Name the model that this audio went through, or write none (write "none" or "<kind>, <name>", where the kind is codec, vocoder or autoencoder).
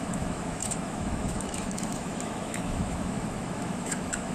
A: autoencoder, DAC-VAE